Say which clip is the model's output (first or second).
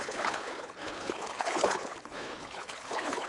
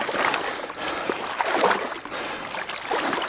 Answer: first